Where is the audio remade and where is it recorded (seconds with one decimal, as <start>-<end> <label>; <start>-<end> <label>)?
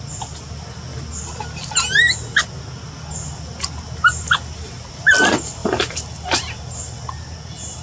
0.0-5.6 recorded; 5.6-6.2 remade; 6.2-7.8 recorded